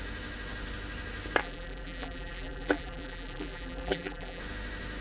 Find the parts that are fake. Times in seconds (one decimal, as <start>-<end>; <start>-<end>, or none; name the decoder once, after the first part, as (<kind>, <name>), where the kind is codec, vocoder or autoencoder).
1.4-4.4 (vocoder, BigVGAN v2)